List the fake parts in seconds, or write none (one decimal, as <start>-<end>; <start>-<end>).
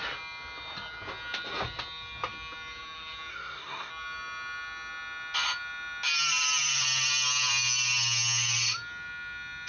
3.3-3.9